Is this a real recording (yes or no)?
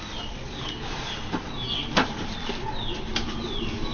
yes